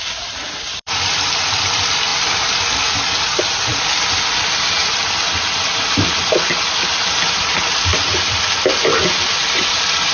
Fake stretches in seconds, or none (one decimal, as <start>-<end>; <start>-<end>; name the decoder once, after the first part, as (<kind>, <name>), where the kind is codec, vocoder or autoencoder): 0.0-10.1 (vocoder, BigVGAN v2)